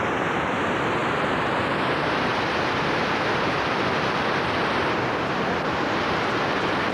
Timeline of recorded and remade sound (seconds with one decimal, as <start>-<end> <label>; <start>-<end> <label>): 0.0-6.9 recorded